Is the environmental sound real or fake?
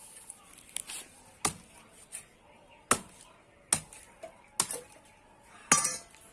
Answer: real